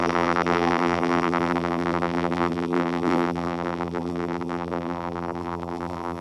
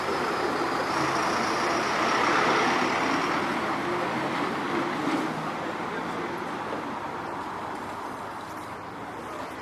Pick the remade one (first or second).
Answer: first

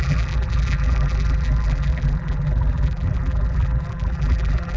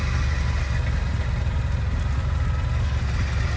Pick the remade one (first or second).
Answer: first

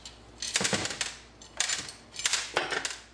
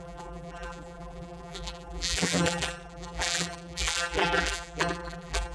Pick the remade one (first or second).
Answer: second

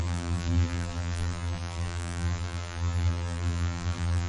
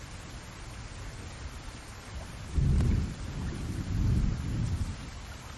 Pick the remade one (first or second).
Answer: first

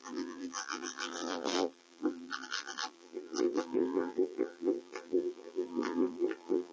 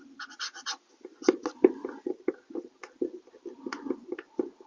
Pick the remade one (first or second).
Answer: first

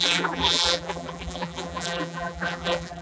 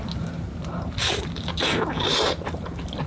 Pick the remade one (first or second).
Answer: first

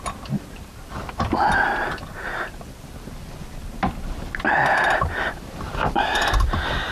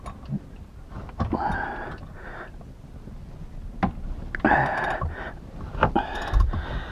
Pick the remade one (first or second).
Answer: first